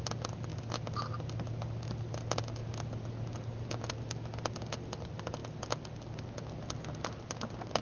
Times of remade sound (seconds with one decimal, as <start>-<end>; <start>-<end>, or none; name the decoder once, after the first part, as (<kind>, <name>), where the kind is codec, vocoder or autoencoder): none